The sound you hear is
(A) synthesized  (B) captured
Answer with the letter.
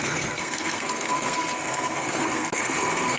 A